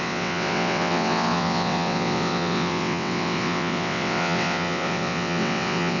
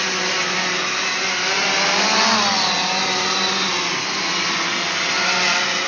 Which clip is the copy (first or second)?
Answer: first